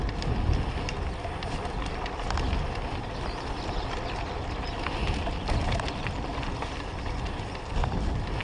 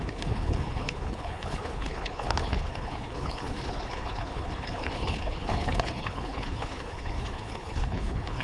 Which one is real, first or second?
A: first